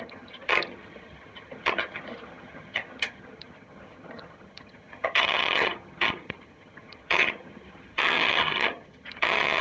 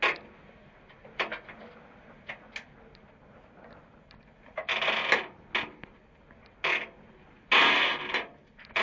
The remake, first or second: first